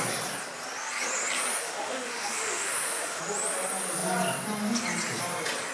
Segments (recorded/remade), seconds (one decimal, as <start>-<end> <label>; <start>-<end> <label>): 0.0-1.6 recorded; 1.6-3.2 remade; 3.2-5.7 recorded